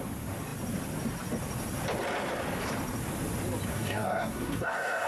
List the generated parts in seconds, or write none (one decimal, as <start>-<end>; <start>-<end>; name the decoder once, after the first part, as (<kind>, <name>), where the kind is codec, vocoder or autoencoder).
3.7-5.1 (codec, SNAC)

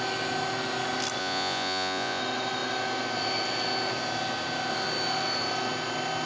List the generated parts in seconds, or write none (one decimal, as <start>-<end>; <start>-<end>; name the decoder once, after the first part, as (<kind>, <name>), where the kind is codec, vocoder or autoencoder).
1.2-2.2 (vocoder, Vocos)